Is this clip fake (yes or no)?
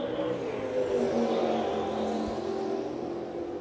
no